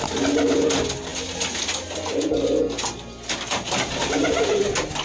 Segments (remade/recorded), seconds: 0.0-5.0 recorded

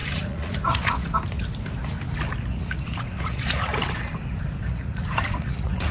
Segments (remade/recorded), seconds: 0.0-1.1 remade; 1.1-2.5 recorded; 2.5-3.7 remade; 3.7-4.6 recorded; 4.6-5.9 remade

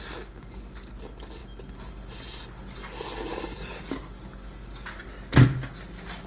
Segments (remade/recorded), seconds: 0.0-6.3 recorded

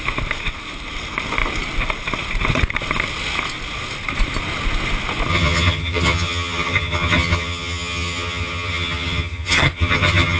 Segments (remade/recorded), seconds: 0.0-5.3 recorded; 5.3-10.4 remade

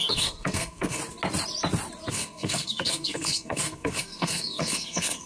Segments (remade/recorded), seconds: 0.0-1.0 remade; 1.0-2.1 recorded; 2.1-5.3 remade

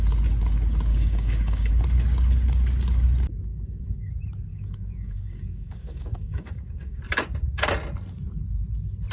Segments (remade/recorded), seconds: 0.0-0.9 recorded; 0.9-1.7 remade; 1.7-3.5 recorded; 3.5-4.1 remade; 4.1-4.5 recorded; 4.5-7.0 remade; 7.0-9.1 recorded